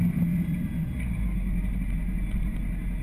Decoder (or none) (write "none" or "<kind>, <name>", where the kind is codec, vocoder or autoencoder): none